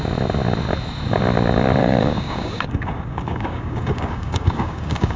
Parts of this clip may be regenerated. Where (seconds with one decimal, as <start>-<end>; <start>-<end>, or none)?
1.8-5.2